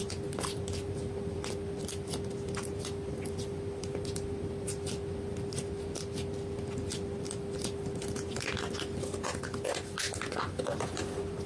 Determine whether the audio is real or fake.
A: real